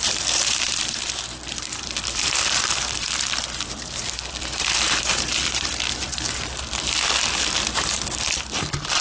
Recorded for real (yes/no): no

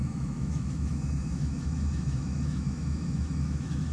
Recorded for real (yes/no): no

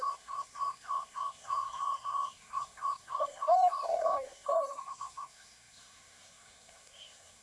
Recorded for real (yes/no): no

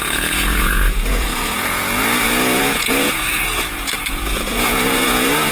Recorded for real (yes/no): no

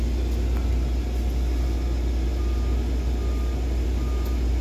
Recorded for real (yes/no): yes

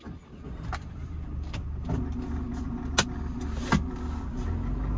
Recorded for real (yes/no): yes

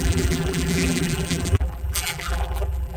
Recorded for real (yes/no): no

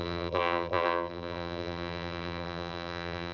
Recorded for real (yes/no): no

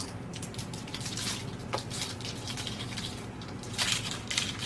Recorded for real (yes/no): no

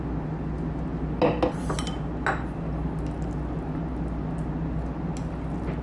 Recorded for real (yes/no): yes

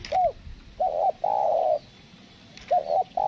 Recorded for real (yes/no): yes